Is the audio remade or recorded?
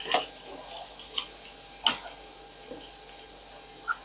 recorded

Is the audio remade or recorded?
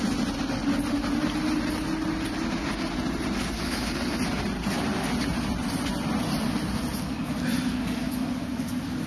recorded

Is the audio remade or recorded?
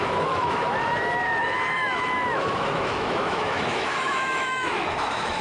remade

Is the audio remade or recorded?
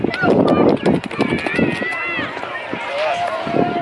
recorded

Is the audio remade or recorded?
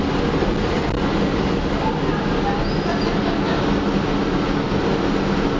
recorded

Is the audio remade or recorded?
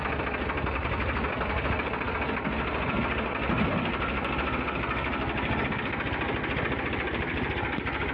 recorded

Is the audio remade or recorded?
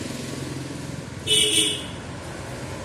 recorded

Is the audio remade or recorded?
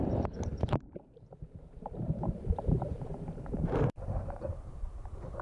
remade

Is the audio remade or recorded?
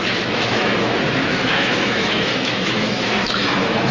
remade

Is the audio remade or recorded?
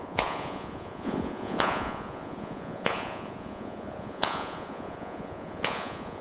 remade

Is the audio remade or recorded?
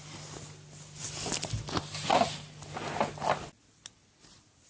recorded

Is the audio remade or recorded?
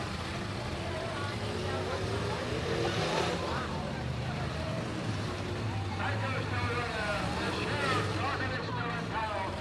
remade